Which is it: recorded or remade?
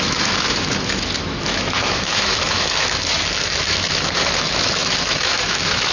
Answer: remade